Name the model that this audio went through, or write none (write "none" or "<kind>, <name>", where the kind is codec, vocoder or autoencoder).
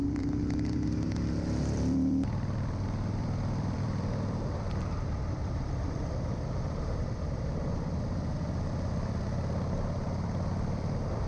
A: vocoder, BigVGAN v2